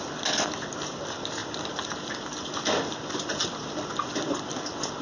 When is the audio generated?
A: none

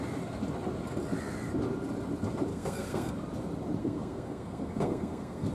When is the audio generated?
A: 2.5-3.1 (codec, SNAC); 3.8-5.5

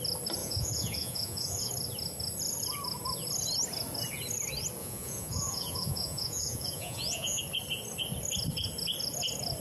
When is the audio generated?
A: 0.4-1.7 (vocoder, Vocos); 4.8-7.4

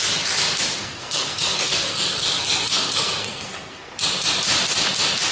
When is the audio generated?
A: 0.8-4.0 (codec, SNAC)

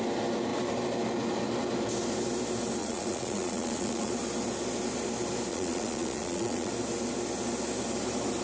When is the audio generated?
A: 2.8-4.1 (vocoder, Vocos); 5.5-6.7